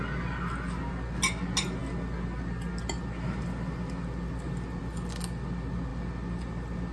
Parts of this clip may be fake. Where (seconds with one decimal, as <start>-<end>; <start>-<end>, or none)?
none